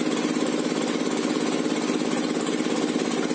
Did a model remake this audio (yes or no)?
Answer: no